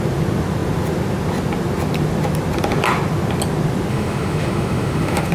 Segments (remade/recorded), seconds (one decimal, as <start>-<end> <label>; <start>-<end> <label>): 0.0-3.9 recorded; 3.9-5.3 remade